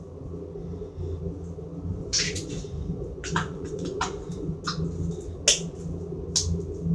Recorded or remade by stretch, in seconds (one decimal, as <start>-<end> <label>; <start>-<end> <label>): 0.0-1.9 recorded; 1.9-4.8 remade; 4.8-6.9 recorded